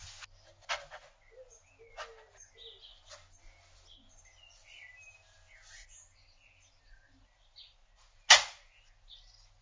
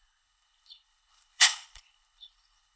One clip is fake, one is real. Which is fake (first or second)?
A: second